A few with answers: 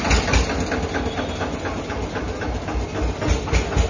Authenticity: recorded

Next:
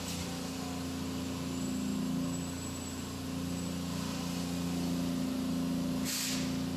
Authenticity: recorded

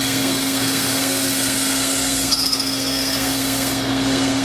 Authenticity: remade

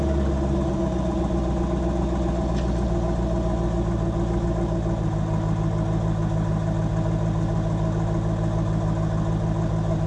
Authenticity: recorded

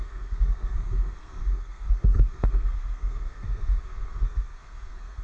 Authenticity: remade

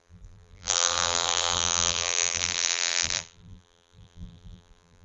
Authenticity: remade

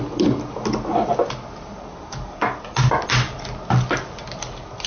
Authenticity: recorded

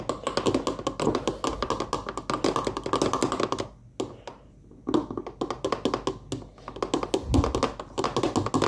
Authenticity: recorded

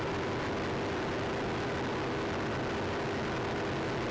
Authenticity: recorded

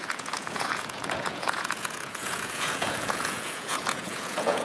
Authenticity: remade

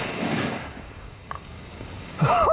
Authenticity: remade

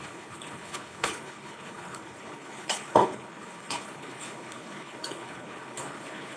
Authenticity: remade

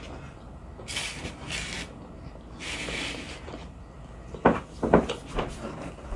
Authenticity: recorded